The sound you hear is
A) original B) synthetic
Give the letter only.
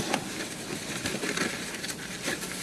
A